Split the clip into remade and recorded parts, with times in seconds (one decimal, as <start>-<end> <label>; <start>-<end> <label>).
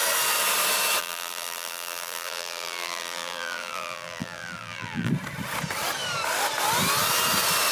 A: 0.0-1.0 recorded; 1.0-5.1 remade; 5.1-7.7 recorded